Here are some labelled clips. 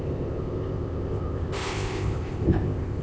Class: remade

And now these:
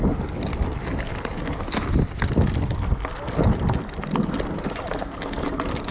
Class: recorded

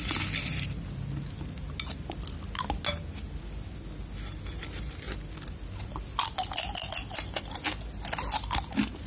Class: recorded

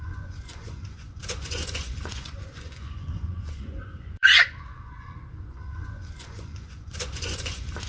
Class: remade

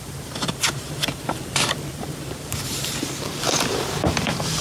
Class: remade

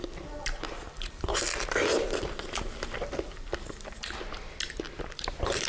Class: recorded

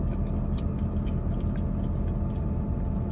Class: recorded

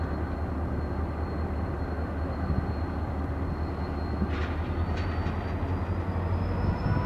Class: recorded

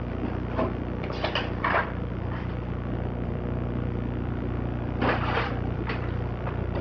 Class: remade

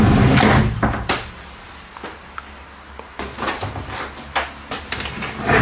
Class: recorded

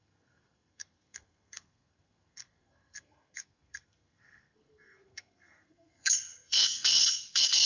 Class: remade